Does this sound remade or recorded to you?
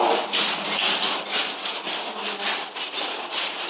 recorded